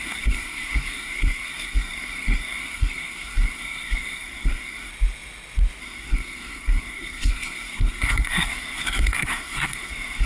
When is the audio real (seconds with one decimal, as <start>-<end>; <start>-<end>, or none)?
4.9-5.8